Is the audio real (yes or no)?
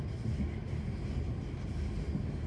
yes